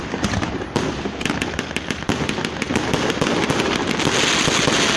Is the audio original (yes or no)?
yes